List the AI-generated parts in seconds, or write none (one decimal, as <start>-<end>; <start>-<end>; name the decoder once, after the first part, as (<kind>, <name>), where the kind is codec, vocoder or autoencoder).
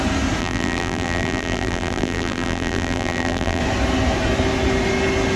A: 0.4-3.6 (vocoder, BigVGAN v2)